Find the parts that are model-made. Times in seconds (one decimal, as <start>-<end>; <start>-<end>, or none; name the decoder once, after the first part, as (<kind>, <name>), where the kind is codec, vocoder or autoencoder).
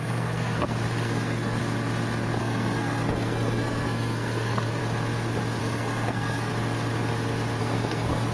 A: 0.0-1.6 (codec, SNAC); 2.4-4.8; 5.6-6.5; 7.6-8.3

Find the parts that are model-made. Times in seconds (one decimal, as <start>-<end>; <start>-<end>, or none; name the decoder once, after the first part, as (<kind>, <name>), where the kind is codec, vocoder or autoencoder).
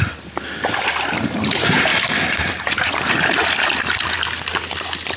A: none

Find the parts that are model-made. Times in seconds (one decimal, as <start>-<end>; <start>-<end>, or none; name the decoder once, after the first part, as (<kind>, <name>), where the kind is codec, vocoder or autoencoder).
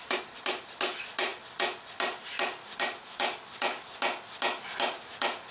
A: none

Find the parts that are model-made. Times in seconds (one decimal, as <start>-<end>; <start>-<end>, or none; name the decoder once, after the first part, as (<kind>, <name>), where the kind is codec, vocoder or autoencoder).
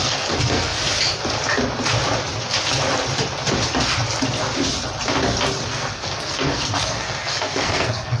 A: 0.0-0.8 (codec, SNAC); 5.7-8.2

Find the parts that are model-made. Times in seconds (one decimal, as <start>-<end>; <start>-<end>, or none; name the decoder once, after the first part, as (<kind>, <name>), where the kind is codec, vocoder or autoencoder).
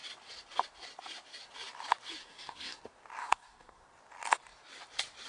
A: 2.2-2.8 (codec, SNAC); 3.2-3.8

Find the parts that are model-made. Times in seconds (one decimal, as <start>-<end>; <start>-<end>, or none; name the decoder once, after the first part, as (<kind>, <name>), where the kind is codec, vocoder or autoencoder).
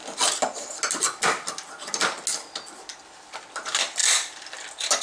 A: none